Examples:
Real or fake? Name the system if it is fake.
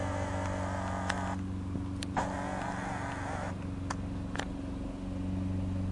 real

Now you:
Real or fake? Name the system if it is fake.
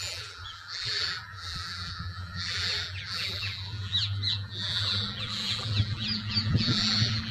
fake, vocoder, BigVGAN v2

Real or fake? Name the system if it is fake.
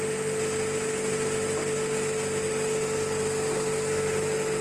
real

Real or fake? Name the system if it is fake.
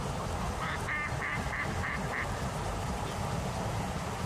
fake, vocoder, BigVGAN v2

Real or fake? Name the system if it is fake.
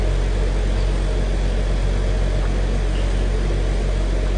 real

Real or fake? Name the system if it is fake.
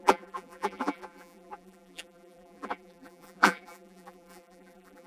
fake, vocoder, BigVGAN v2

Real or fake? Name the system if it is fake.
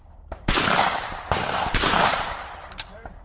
fake, vocoder, BigVGAN v2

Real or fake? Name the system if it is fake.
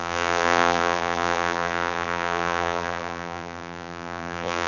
fake, vocoder, BigVGAN v2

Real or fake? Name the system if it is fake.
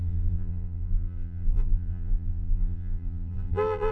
fake, vocoder, BigVGAN v2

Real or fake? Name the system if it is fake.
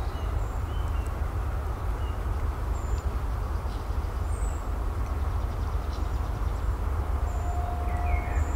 real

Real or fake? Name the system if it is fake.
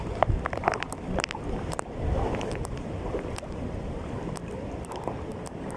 fake, vocoder, BigVGAN v2